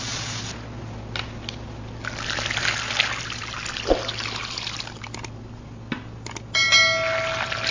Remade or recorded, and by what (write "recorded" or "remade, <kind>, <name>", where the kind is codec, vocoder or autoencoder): recorded